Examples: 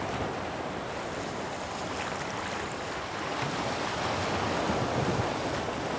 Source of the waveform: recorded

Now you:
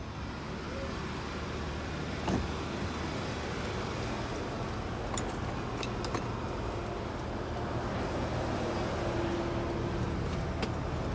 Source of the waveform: recorded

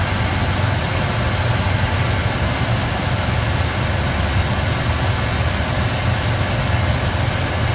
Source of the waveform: recorded